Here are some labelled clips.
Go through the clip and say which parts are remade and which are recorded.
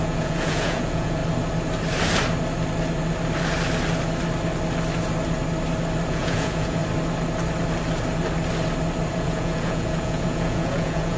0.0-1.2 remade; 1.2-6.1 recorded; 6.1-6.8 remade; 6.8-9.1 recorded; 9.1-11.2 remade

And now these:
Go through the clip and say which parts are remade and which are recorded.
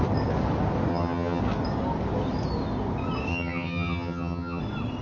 0.0-0.9 recorded; 0.9-1.4 remade; 1.4-3.3 recorded; 3.3-4.6 remade; 4.6-5.0 recorded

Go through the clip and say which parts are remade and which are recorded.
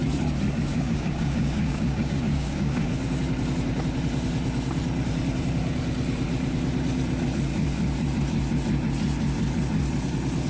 0.0-0.7 recorded; 0.7-2.9 remade; 2.9-10.5 recorded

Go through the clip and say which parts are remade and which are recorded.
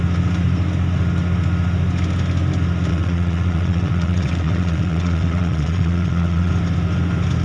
0.0-2.9 recorded; 2.9-6.5 remade; 6.5-7.4 recorded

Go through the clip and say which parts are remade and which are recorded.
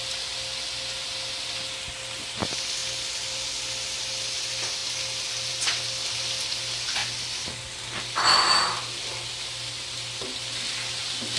0.0-11.4 recorded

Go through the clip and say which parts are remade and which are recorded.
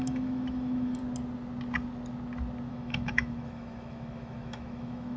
0.0-1.0 remade; 1.0-2.7 recorded; 2.7-5.2 remade